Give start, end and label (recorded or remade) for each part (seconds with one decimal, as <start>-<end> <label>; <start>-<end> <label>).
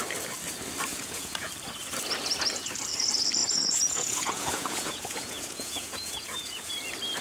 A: 0.0-0.9 recorded; 0.9-1.5 remade; 1.5-3.4 recorded; 3.4-6.7 remade; 6.7-7.2 recorded